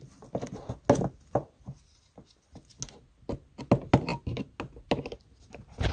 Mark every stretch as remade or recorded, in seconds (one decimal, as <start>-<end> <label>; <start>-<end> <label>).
0.0-5.9 recorded